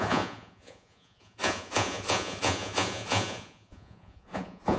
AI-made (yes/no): yes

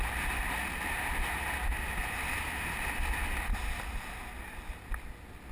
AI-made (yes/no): no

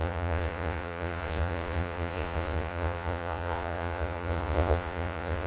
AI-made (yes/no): yes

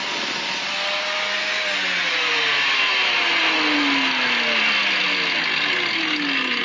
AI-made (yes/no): no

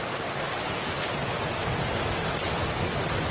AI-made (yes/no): no